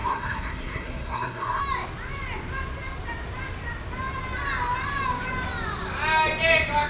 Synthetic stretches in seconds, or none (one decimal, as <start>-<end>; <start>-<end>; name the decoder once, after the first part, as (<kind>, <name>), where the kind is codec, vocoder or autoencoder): 0.0-1.6 (codec, SNAC)